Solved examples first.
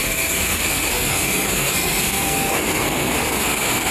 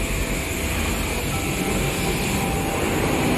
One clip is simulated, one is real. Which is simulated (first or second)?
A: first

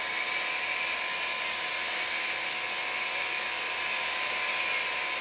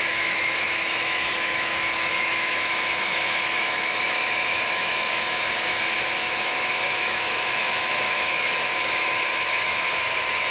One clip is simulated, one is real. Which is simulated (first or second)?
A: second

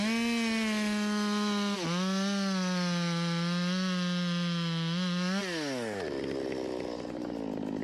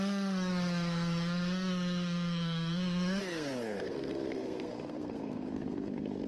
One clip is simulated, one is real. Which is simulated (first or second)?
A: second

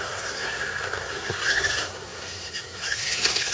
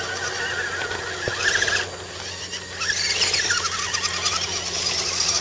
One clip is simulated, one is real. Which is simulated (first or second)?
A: first